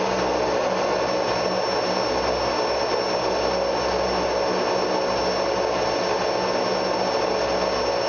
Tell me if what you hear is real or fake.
real